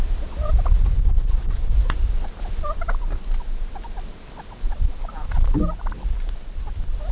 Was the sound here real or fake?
real